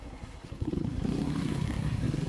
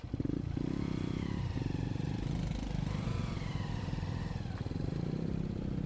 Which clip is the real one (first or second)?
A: second